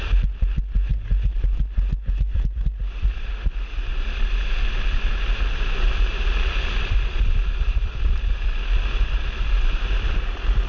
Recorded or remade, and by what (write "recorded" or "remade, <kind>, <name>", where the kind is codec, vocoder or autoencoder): recorded